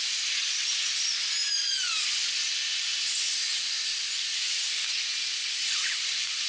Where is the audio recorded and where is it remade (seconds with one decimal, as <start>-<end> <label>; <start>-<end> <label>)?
0.0-1.6 recorded; 1.6-2.5 remade; 2.5-3.5 recorded; 3.5-4.1 remade; 4.1-6.5 recorded